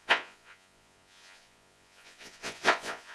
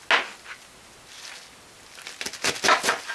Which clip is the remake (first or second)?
first